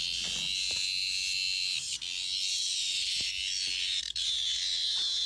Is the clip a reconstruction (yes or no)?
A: no